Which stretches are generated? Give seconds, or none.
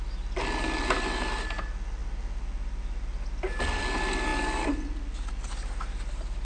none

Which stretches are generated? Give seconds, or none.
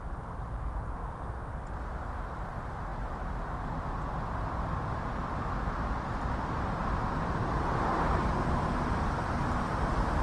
0.9-1.5 (autoencoder, DAC-VAE)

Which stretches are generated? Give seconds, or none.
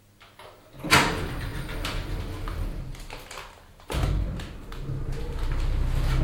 none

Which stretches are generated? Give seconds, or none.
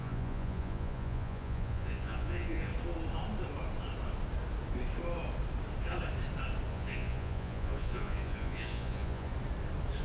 0.0-2.7 (vocoder, Vocos); 6.7-9.3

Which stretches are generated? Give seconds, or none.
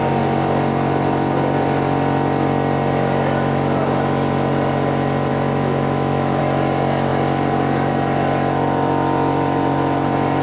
5.3-6.4 (autoencoder, DAC-VAE)